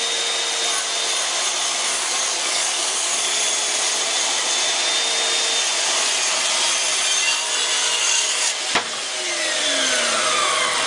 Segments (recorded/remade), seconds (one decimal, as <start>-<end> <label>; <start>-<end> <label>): 0.0-1.9 recorded; 1.9-3.4 remade; 3.4-7.8 recorded; 7.8-8.6 remade; 8.6-10.9 recorded